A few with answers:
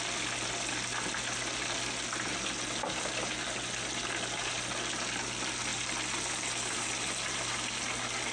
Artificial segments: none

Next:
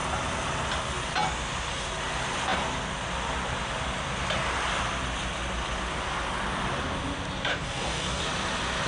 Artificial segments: 7.5-8.2 (codec, DAC)

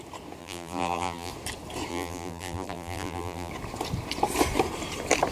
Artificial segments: 0.4-1.3 (vocoder, BigVGAN v2); 1.9-3.5

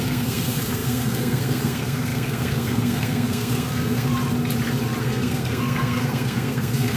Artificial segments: 0.0-4.1 (codec, SNAC); 5.0-7.0